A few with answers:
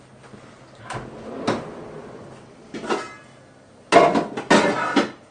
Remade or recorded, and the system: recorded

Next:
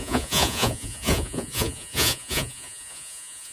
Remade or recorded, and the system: remade, vocoder, Vocos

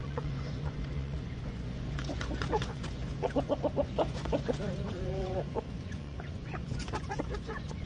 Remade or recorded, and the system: remade, vocoder, Vocos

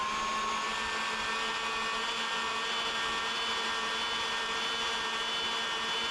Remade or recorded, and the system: recorded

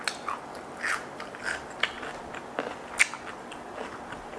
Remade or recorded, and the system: recorded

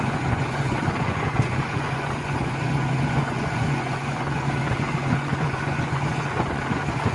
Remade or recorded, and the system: remade, vocoder, Vocos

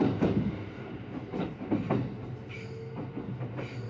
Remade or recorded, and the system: recorded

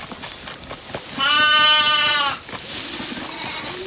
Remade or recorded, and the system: recorded